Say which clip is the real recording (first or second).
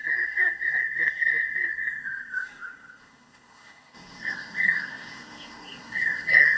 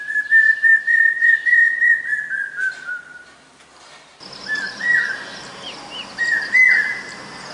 second